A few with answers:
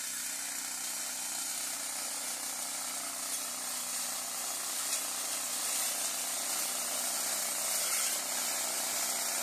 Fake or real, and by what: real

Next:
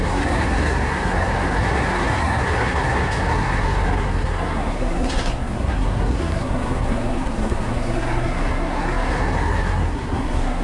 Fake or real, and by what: fake, codec, SNAC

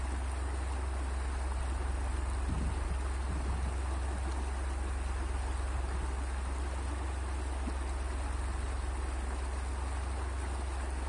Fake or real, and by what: real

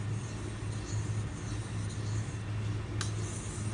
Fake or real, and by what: real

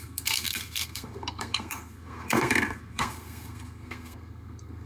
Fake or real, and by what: fake, codec, SNAC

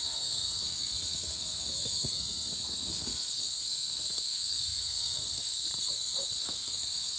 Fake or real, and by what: fake, codec, SNAC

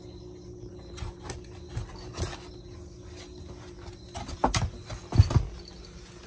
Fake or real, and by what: real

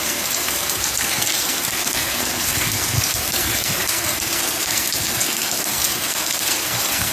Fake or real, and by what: fake, codec, SNAC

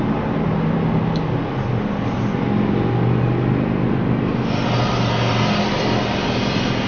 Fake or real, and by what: real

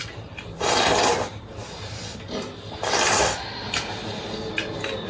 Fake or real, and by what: real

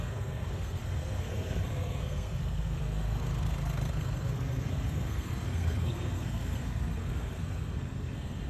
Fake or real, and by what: fake, codec, SNAC